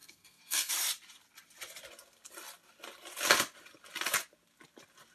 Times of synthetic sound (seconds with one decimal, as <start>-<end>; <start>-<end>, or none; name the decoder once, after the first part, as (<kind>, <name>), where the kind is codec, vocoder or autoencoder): 0.0-0.7 (codec, SNAC)